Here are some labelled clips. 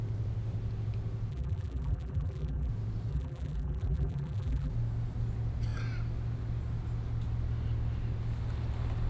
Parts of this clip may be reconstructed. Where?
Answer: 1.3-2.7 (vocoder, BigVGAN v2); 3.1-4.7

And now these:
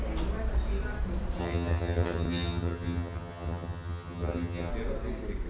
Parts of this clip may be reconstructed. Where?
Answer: 1.4-4.7 (vocoder, HiFi-GAN)

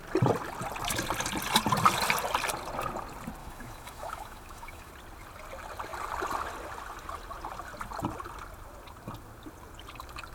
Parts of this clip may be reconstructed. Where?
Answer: 3.4-4.9 (autoencoder, DAC-VAE)

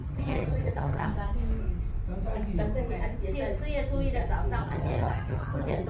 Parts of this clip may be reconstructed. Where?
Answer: 0.0-1.1 (vocoder, HiFi-GAN); 4.6-5.9

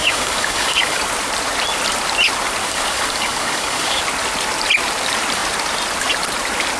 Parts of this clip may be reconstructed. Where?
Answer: 0.0-1.0 (codec, DAC); 2.6-4.0

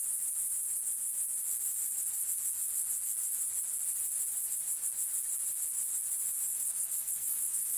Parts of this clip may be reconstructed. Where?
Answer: 6.5-7.8 (codec, SNAC)